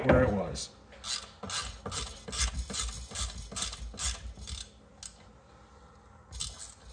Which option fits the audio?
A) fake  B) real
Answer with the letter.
B